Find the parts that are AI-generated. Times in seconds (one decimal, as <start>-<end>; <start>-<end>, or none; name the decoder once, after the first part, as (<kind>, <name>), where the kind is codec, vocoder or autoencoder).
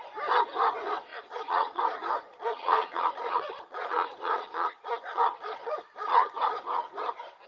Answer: 1.1-1.8 (vocoder, Vocos); 2.2-6.4